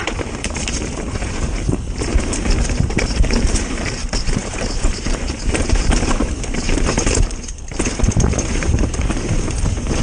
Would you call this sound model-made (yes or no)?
yes